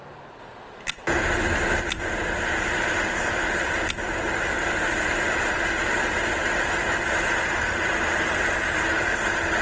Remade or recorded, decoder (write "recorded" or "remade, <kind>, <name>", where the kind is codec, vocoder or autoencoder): recorded